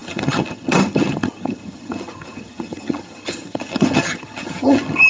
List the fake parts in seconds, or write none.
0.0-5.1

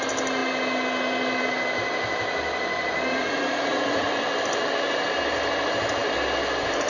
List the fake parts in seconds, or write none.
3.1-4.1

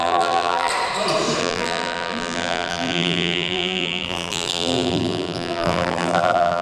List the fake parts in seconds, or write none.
0.0-0.7; 1.4-6.6

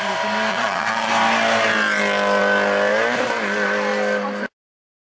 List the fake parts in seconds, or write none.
0.5-1.1

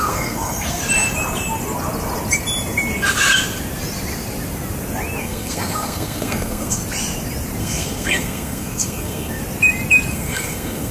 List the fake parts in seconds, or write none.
0.0-0.8; 5.2-6.8; 7.6-9.4; 10.1-10.9